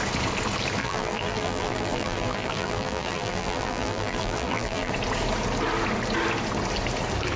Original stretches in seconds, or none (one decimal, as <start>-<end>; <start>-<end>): 0.0-0.8; 4.9-7.4

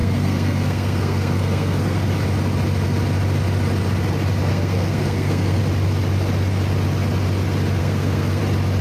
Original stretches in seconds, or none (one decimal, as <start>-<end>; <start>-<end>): 2.0-4.5; 5.6-7.8; 8.4-8.8